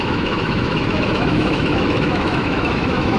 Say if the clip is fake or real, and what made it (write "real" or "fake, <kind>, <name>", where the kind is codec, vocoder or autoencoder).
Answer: fake, autoencoder, DAC-VAE